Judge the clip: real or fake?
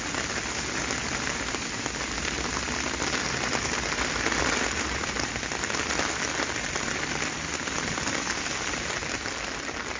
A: real